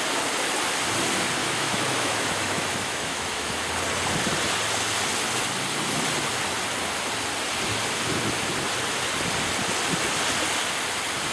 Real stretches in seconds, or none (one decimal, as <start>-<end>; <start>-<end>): 0.0-1.4; 3.5-11.3